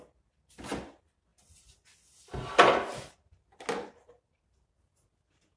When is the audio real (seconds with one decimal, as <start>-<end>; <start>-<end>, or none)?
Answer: 0.0-5.6